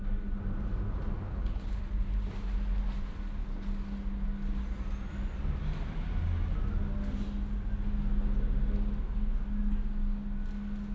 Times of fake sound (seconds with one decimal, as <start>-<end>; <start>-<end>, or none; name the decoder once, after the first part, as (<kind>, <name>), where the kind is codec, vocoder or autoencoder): 1.3-1.8 (codec, HILCodec)